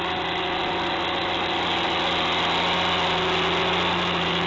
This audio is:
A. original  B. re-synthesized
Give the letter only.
A